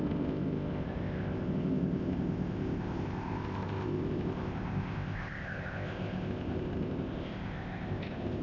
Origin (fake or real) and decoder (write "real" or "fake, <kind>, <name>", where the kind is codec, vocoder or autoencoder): fake, codec, ZipCodec